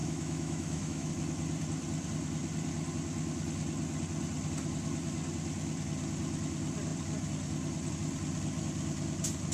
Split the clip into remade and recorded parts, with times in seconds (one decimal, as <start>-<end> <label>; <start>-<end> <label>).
0.0-1.1 remade; 1.1-9.5 recorded